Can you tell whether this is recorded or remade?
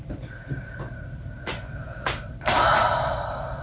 remade